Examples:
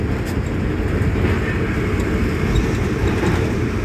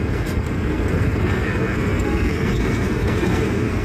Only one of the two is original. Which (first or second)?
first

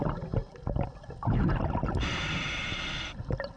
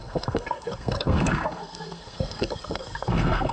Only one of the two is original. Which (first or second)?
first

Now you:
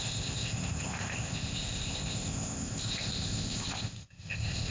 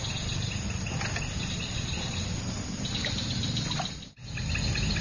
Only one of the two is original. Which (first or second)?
second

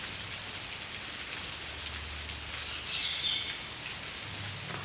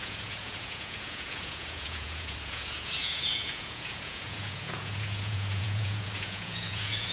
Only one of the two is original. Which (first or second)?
first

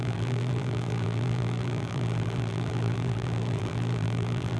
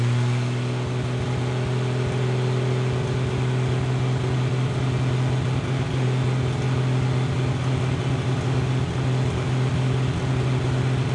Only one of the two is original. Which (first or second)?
second